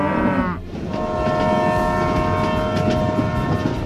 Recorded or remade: recorded